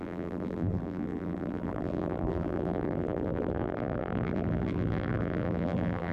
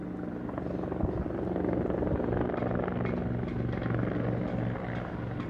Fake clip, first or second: first